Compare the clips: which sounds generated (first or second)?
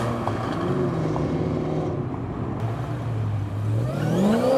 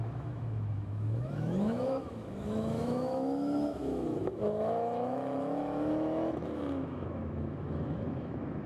second